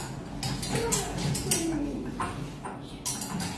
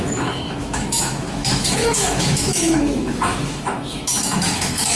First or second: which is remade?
second